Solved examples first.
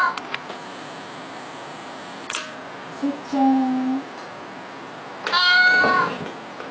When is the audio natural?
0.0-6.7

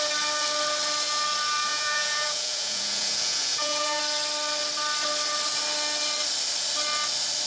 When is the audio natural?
0.0-1.7; 4.0-7.5

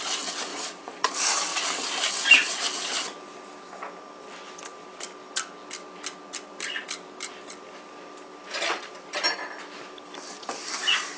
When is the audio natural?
0.0-0.5; 1.1-11.2

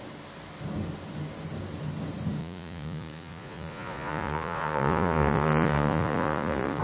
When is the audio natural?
0.0-2.4